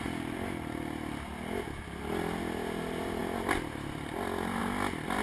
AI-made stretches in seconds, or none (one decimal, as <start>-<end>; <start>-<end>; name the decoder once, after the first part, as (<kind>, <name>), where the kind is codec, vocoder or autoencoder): none